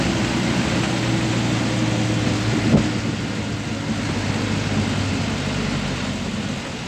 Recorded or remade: recorded